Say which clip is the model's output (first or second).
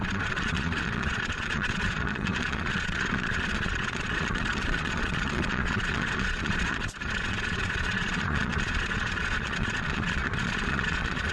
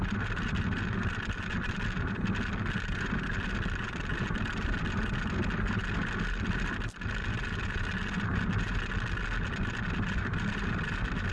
first